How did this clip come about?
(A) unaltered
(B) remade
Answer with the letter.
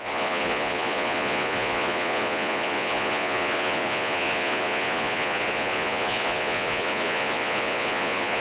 B